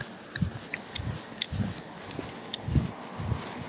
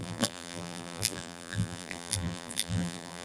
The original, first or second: first